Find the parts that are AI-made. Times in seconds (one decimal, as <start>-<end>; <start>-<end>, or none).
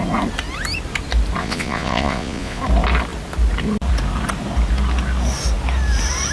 1.4-2.6